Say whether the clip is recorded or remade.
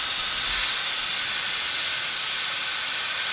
recorded